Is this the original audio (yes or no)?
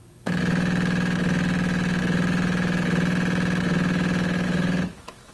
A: no